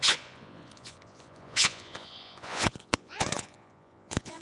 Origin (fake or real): fake